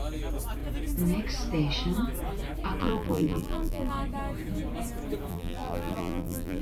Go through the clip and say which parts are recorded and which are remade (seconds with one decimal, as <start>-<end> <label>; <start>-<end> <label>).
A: 0.0-2.8 recorded; 2.8-3.9 remade; 3.9-5.3 recorded; 5.3-6.6 remade